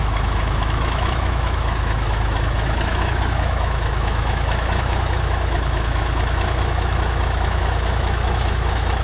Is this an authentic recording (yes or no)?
no